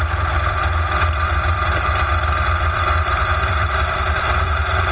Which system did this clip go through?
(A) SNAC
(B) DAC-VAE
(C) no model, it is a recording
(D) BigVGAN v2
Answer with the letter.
D